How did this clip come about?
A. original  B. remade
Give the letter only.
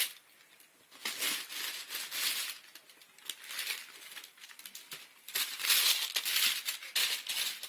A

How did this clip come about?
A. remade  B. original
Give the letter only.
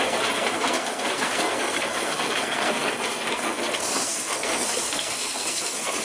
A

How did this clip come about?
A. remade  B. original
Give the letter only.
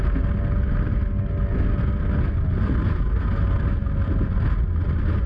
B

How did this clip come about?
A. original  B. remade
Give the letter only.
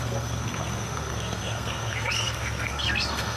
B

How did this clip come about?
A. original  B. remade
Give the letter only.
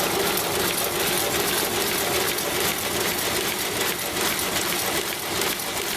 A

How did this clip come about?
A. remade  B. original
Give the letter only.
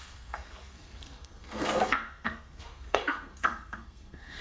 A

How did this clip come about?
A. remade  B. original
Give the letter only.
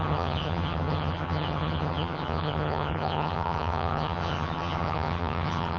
A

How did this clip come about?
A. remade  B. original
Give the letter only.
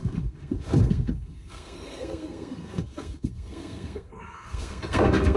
A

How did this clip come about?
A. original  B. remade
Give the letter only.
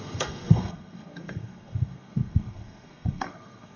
B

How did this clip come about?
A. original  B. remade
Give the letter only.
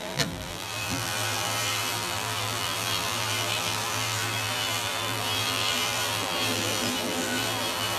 B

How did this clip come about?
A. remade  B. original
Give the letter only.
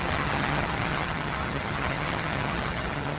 A